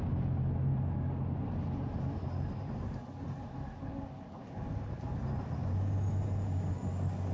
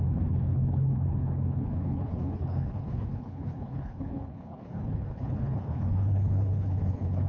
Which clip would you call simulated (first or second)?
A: second